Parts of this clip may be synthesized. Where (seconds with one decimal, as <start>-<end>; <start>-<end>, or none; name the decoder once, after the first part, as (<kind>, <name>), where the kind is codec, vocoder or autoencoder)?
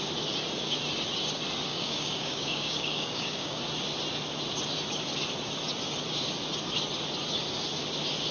1.7-3.6 (codec, DAC)